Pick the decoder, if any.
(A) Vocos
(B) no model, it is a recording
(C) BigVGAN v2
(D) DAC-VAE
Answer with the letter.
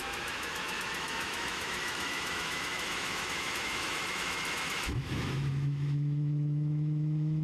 D